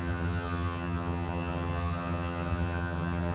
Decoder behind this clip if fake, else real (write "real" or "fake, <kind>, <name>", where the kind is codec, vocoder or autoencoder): fake, vocoder, HiFi-GAN